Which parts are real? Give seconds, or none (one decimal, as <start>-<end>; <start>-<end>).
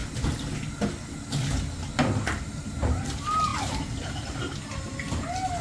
0.0-2.4